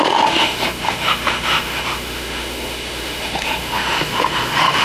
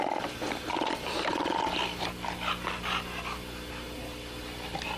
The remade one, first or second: first